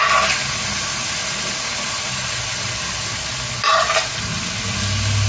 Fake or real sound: real